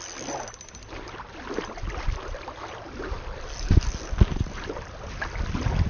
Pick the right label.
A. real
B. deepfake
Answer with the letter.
A